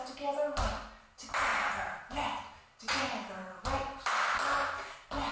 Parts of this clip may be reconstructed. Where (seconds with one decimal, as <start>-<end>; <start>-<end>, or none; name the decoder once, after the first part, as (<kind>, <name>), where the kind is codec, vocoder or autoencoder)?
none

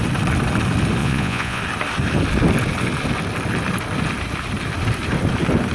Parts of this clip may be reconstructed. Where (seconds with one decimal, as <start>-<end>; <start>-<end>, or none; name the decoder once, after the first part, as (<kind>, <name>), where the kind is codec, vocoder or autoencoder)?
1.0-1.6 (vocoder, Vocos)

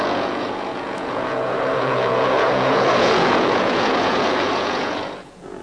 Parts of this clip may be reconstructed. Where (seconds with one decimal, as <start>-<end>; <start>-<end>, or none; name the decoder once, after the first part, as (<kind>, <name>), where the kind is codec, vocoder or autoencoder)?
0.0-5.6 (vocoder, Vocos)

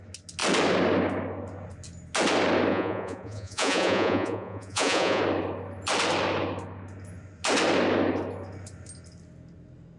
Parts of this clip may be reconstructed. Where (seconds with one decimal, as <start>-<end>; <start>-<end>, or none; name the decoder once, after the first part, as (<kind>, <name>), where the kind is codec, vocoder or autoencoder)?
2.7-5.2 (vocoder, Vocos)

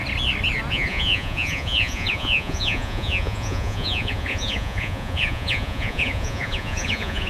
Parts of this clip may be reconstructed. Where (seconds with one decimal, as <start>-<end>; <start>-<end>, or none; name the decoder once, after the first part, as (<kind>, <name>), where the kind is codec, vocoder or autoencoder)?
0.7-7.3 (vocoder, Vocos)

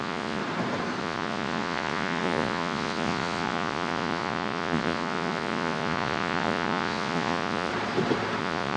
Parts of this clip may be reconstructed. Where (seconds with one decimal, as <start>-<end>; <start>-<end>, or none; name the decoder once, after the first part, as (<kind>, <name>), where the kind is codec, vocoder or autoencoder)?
0.0-0.4 (vocoder, Vocos); 1.0-7.7; 8.4-8.8